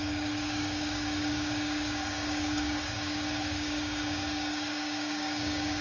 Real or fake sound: fake